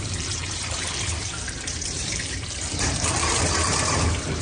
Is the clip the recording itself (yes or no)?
no